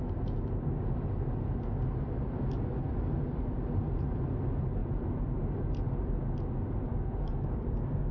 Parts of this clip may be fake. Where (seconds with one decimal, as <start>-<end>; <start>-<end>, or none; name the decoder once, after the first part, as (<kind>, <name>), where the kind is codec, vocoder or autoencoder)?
6.9-8.1 (codec, DAC)